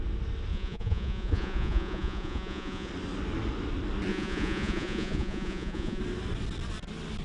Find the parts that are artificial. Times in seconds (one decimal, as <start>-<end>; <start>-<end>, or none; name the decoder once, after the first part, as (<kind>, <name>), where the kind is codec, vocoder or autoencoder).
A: 0.5-2.9 (vocoder, Vocos); 4.1-6.0